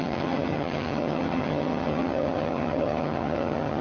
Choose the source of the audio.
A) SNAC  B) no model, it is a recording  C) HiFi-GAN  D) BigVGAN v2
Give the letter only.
C